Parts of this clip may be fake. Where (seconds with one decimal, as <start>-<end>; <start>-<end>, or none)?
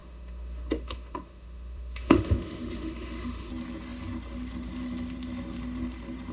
0.0-3.5